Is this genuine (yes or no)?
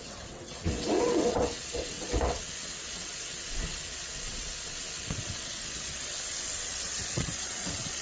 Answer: no